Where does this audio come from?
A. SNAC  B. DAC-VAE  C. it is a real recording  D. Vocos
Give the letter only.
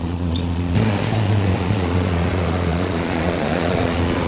D